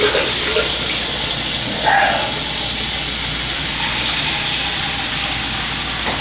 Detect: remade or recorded recorded